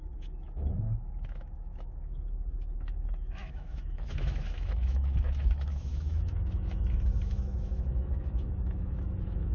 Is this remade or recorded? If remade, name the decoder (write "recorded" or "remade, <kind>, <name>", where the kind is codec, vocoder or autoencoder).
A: remade, autoencoder, DAC-VAE